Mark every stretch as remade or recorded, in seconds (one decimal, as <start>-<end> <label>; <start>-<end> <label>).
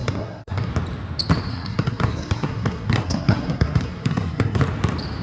0.0-0.7 remade; 0.7-1.5 recorded; 1.5-4.6 remade; 4.6-5.2 recorded